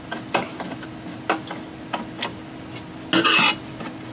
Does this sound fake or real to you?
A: real